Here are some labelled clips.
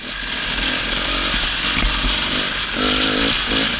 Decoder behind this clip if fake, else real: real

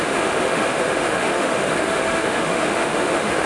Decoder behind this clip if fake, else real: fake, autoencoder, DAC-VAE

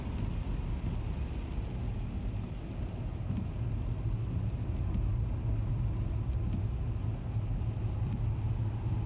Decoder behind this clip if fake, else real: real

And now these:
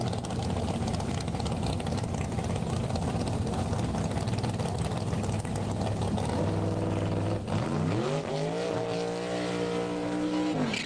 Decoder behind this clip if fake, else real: real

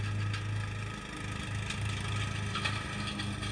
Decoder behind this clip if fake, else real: real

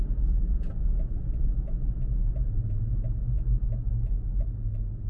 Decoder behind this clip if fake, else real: fake, vocoder, Vocos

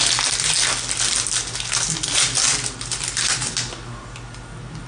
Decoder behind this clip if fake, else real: real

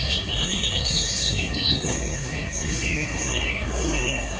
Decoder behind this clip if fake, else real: fake, codec, SNAC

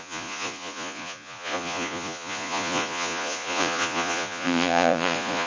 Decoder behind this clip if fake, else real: fake, vocoder, Vocos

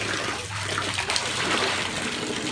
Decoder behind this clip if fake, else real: real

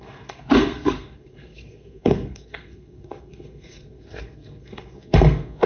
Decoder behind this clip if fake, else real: fake, codec, SNAC